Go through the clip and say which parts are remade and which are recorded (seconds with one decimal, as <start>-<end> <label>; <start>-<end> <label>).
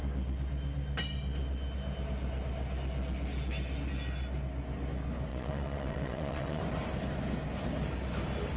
0.0-5.3 recorded; 5.3-6.6 remade; 6.6-8.6 recorded